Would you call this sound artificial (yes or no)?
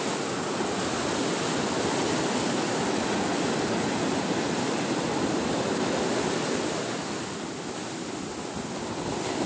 no